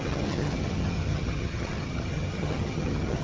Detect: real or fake fake